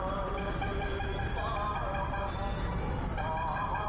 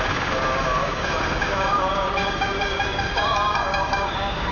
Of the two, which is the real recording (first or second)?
first